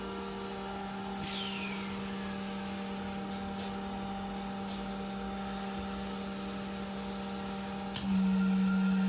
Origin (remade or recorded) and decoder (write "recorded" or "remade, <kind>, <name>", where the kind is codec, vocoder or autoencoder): recorded